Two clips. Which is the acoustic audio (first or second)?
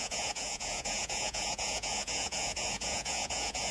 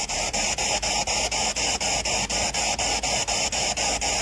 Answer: second